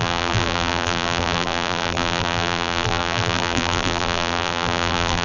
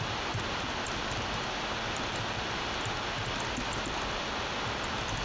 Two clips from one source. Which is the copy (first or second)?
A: first